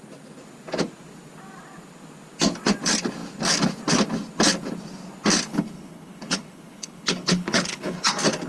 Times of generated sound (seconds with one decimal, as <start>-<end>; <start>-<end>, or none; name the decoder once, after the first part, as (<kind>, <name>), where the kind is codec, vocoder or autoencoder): 5.5-8.1 (codec, HILCodec)